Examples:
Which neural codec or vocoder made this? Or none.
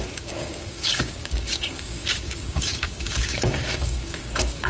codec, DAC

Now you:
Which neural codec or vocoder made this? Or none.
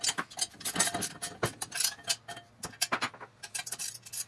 none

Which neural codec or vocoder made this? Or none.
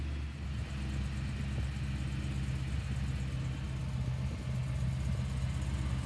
none